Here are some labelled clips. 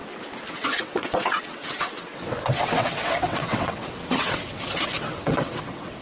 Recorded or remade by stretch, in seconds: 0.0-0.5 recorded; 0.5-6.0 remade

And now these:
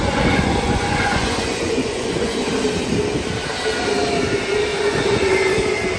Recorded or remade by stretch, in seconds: 0.0-2.5 remade; 2.5-4.7 recorded; 4.7-5.3 remade; 5.3-6.0 recorded